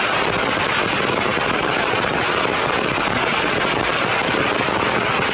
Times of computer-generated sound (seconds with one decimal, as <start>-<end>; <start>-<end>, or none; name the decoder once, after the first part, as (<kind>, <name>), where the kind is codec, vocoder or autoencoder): none